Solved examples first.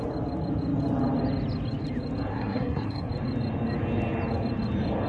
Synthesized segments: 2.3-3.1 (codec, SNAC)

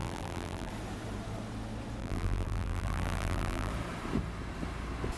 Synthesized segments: 0.0-0.7 (vocoder, BigVGAN v2); 2.0-3.7

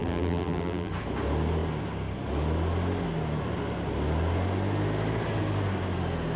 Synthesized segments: 0.0-0.9 (vocoder, BigVGAN v2)

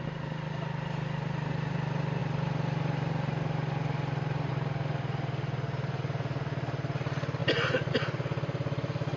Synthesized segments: none

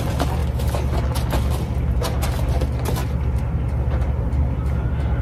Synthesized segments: none

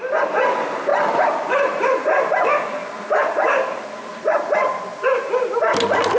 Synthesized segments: 0.9-2.2 (vocoder, BigVGAN v2); 4.1-4.8

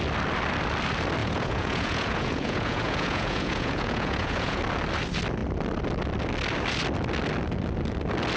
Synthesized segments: 1.2-4.6 (vocoder, Vocos)